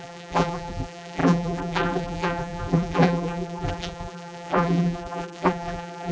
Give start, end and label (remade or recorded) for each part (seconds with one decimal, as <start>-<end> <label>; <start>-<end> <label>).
0.0-6.1 remade